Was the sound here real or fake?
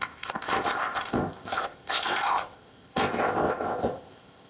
fake